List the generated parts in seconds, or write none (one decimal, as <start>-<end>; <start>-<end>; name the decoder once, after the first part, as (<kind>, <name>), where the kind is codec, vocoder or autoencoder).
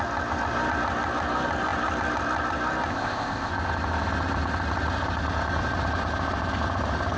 2.9-3.5 (codec, ZipCodec)